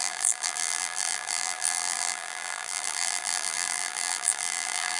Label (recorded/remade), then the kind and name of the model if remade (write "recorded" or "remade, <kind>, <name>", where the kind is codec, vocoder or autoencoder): remade, vocoder, BigVGAN v2